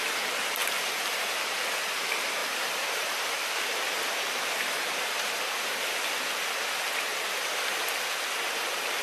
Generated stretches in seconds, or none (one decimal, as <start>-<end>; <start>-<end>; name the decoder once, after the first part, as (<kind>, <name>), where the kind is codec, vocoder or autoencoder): 0.6-1.3 (vocoder, BigVGAN v2); 2.4-5.8

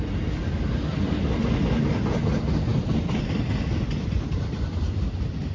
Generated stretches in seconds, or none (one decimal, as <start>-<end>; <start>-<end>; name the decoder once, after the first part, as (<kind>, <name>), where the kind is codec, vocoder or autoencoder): 2.7-5.1 (vocoder, BigVGAN v2)

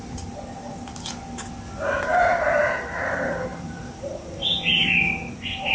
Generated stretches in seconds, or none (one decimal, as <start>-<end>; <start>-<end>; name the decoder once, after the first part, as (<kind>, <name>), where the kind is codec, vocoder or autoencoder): 2.1-3.1 (vocoder, BigVGAN v2); 3.5-5.0

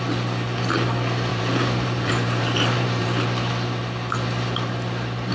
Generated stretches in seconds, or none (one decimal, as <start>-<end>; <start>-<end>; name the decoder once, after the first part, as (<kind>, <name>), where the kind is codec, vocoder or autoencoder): 1.3-3.5 (vocoder, BigVGAN v2)

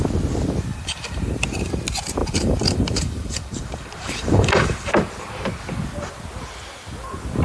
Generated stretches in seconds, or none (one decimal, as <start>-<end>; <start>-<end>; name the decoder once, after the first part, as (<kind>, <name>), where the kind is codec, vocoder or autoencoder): 0.7-1.7 (vocoder, BigVGAN v2); 2.2-4.9

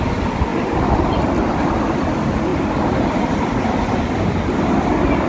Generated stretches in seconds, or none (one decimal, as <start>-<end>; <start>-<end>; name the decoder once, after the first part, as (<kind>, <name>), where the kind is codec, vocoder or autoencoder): 0.5-1.0 (vocoder, BigVGAN v2)